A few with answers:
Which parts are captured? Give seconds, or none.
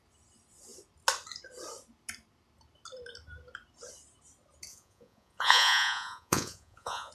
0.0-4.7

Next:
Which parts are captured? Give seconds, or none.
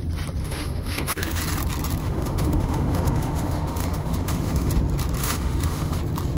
0.0-0.4; 1.4-2.0; 4.7-5.2; 6.0-6.4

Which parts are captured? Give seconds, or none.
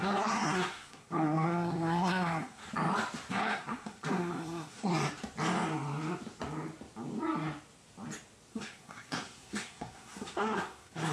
2.6-3.3; 4.9-8.5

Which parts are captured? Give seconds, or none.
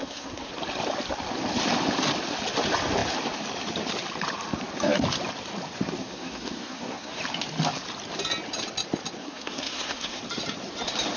0.5-6.0; 7.2-9.2; 10.2-11.2